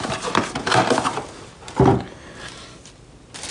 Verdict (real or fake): real